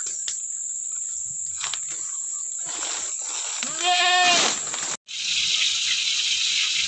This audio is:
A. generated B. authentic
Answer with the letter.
B